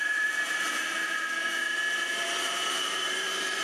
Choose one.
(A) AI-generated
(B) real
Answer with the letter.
A